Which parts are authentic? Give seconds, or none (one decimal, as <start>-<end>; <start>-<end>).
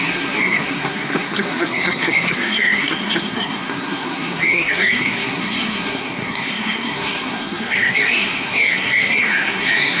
none